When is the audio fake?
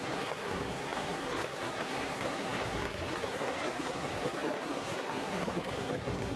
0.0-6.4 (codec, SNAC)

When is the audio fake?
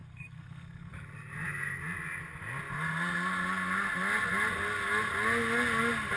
0.0-0.9 (codec, SNAC)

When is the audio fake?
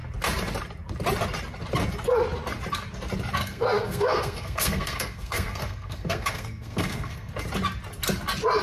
3.4-7.3 (codec, SNAC)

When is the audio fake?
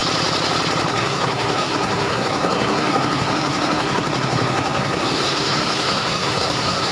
0.9-6.9 (codec, SNAC)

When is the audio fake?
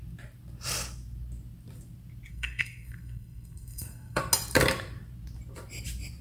2.3-4.2 (codec, SNAC)